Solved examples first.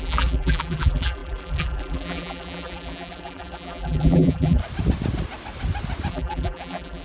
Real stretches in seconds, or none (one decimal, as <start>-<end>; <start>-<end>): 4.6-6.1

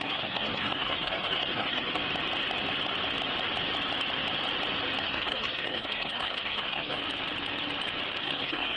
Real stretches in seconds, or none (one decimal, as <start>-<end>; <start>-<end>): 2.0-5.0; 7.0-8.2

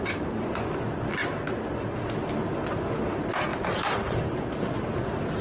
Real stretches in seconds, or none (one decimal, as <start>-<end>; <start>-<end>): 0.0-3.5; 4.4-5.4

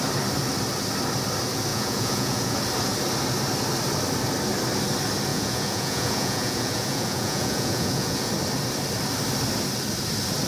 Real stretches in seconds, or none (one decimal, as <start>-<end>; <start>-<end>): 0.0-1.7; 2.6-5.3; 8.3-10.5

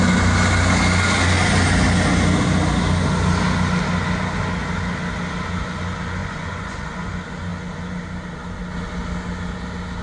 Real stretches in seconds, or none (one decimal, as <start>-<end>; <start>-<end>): 0.0-6.2; 7.1-10.0

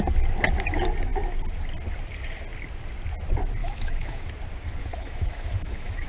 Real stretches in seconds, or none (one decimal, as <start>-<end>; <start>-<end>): 0.0-3.6; 4.3-4.8

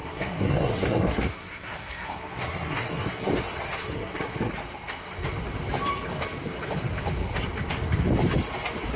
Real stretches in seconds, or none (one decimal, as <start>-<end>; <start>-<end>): 3.3-3.8; 4.5-9.0